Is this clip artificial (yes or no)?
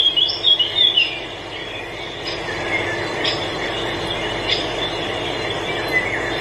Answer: no